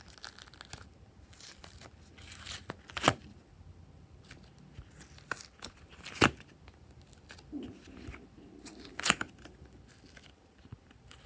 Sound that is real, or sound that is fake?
real